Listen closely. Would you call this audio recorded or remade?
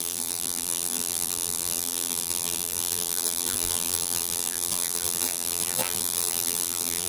remade